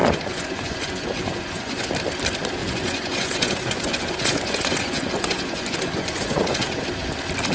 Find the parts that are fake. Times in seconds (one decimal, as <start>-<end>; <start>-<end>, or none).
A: 0.0-1.9; 2.6-6.8